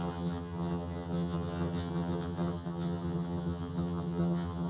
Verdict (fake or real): fake